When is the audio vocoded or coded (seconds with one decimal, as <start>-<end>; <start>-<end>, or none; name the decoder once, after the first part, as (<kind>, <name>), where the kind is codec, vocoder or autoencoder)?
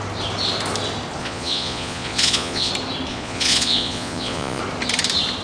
1.2-2.7 (vocoder, Vocos); 3.1-4.6